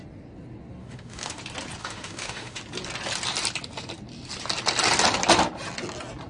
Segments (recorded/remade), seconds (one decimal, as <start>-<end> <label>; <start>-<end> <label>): 0.0-0.8 recorded; 0.8-1.4 remade; 1.4-1.8 recorded; 1.8-2.6 remade; 2.6-6.3 recorded